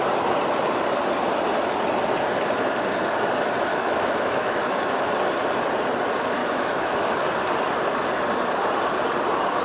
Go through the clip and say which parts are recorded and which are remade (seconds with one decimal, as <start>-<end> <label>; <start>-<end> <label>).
0.0-3.7 recorded; 3.7-5.1 remade; 5.1-6.4 recorded; 6.4-7.1 remade; 7.1-9.6 recorded